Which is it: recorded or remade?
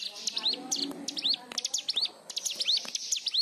recorded